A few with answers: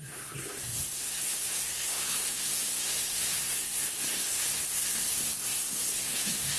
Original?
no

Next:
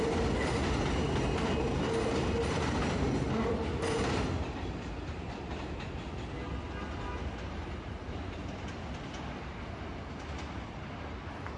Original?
yes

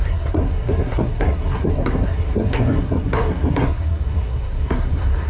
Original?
no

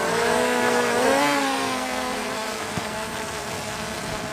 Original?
no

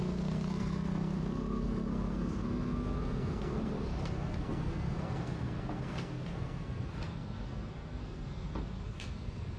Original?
no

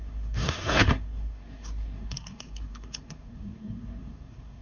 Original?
no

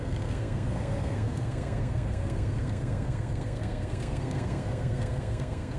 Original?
no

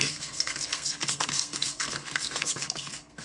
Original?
no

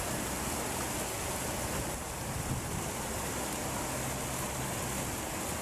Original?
yes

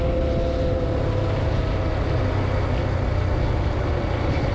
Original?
yes